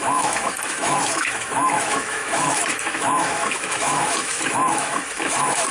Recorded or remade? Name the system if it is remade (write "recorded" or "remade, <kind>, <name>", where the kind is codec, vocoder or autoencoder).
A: remade, autoencoder, DAC-VAE